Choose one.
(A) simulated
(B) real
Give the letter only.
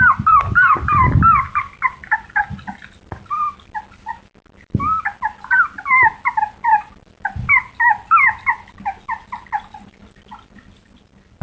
B